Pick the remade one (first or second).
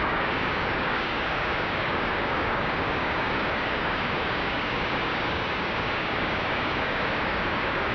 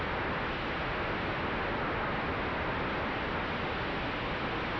first